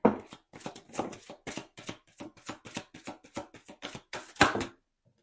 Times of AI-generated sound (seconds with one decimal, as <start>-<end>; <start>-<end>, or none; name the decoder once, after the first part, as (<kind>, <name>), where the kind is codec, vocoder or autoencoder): none